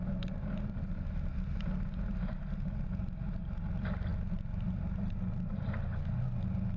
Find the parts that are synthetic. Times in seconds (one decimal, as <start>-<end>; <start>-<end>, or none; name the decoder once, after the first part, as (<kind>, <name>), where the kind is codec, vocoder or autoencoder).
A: none